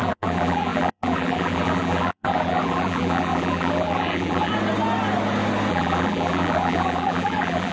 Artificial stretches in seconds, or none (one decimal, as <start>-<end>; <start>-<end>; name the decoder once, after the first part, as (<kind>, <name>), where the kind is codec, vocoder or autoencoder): 0.0-4.5 (vocoder, BigVGAN v2); 5.7-7.7

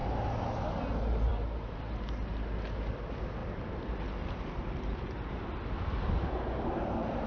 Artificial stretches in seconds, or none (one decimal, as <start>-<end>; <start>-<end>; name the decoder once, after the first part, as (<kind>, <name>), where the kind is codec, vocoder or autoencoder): 3.4-7.3 (vocoder, BigVGAN v2)

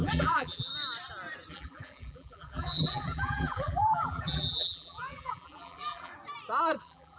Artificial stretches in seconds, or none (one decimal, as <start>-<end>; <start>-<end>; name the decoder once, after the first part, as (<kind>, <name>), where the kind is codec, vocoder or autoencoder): 0.0-0.7 (vocoder, BigVGAN v2); 1.5-6.1; 6.8-7.2

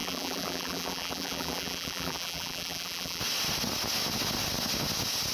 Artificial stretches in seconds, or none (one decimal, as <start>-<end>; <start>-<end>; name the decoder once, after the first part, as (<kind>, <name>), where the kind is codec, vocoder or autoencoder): 0.0-3.2 (vocoder, BigVGAN v2)

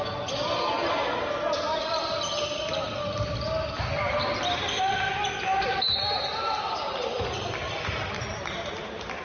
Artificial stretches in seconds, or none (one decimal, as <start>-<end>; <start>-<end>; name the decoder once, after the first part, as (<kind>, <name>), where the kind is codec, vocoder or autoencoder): 5.5-8.7 (vocoder, BigVGAN v2)

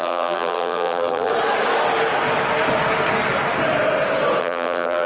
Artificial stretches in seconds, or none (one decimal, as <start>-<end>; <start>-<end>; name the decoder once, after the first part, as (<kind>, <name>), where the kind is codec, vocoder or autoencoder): 0.0-1.3 (vocoder, BigVGAN v2); 4.4-5.1